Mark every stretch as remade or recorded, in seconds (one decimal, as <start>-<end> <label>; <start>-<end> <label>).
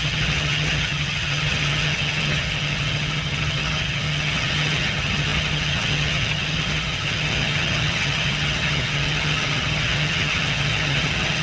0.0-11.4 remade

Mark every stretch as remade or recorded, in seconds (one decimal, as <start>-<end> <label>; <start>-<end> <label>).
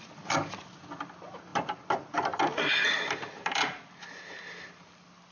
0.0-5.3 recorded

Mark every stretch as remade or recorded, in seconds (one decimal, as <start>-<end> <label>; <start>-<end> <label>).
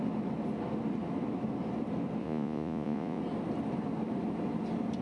0.0-2.2 recorded; 2.2-3.2 remade; 3.2-5.0 recorded